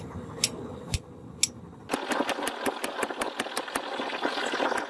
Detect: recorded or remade recorded